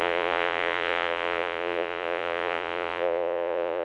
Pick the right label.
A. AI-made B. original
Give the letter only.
A